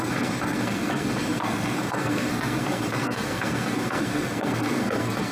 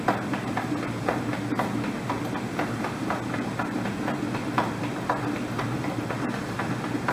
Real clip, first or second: second